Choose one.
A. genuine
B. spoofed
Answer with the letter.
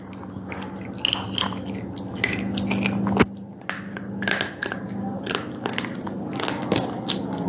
A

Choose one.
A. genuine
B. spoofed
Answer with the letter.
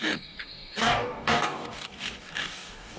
B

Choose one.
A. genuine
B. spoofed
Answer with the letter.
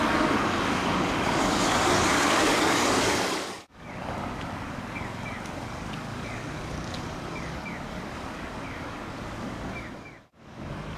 B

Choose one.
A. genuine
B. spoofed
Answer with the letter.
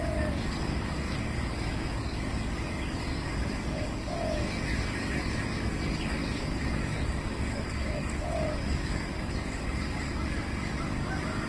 B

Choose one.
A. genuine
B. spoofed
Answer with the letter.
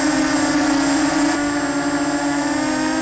A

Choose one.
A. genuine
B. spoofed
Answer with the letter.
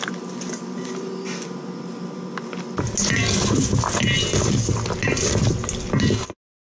A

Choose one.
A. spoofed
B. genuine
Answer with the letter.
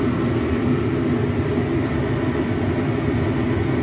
B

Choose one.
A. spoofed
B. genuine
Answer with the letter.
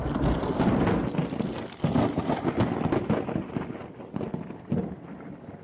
B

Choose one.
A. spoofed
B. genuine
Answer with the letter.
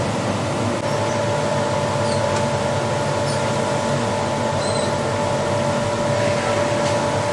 B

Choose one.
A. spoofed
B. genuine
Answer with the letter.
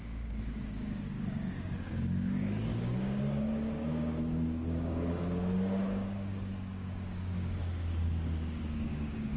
A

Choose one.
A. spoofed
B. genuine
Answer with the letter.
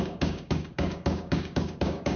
A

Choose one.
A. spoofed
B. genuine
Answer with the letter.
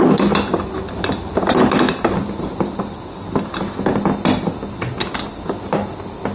B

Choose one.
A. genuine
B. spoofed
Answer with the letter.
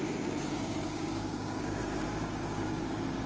B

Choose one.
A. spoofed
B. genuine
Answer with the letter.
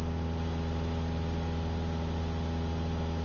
B